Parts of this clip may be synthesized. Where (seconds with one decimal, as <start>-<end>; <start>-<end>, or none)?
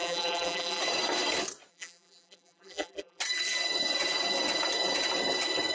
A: 0.0-0.8; 1.7-3.2